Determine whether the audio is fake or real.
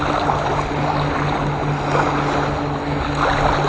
real